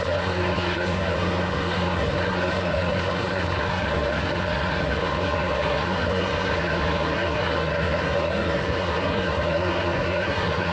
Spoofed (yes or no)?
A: yes